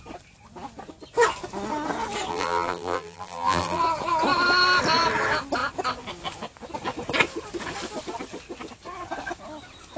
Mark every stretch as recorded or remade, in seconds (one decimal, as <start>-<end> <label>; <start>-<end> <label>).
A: 0.0-2.3 recorded; 2.3-3.8 remade; 3.8-10.0 recorded